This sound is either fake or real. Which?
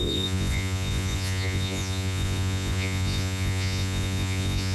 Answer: fake